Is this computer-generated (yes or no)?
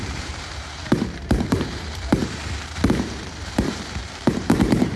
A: yes